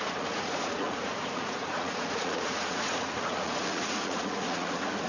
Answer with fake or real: fake